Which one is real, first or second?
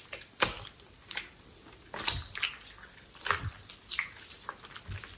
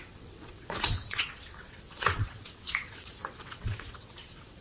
first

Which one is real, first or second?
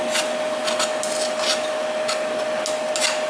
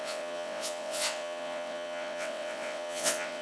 first